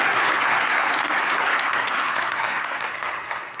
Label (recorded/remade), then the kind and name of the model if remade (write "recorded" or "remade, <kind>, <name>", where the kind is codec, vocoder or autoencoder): remade, codec, SNAC